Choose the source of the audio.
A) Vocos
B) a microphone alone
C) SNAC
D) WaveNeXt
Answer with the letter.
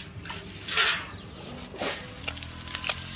B